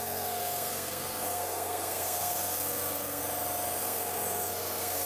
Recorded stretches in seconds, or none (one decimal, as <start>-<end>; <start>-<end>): 3.2-3.8